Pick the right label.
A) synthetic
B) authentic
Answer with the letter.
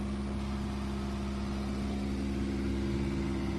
B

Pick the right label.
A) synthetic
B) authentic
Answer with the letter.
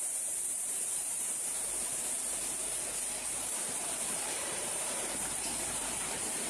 A